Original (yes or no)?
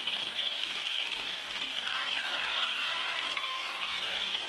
no